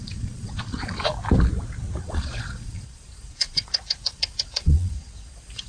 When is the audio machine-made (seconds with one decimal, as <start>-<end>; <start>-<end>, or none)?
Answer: 0.0-1.1; 2.0-5.7